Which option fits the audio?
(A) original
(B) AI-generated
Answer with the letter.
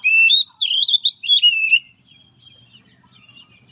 B